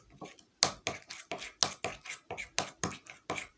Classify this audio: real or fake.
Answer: real